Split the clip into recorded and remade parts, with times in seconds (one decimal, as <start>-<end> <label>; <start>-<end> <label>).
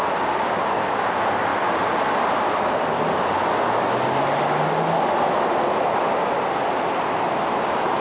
0.0-8.0 recorded